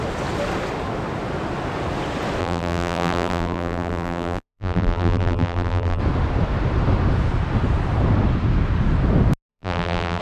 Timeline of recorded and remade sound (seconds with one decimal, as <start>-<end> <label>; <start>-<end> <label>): 0.0-2.4 recorded; 2.4-6.0 remade; 6.0-9.5 recorded; 9.5-10.2 remade